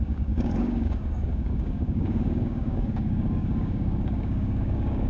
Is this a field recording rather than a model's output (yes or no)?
no